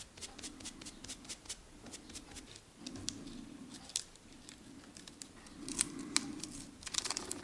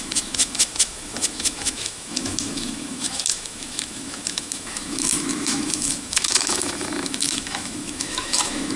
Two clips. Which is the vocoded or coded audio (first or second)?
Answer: second